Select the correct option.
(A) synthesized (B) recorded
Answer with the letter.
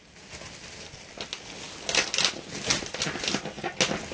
B